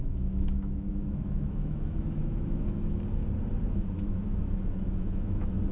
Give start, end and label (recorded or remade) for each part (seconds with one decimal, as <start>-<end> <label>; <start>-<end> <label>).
0.0-3.2 remade; 3.2-3.7 recorded; 3.7-5.7 remade